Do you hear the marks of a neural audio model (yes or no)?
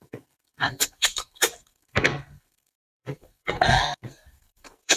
yes